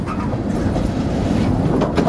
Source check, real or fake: real